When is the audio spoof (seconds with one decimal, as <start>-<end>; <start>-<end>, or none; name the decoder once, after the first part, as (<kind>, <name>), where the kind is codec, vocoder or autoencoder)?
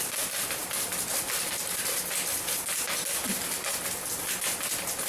none